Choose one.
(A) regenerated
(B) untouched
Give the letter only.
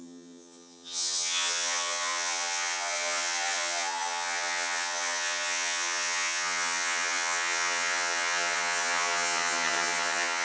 A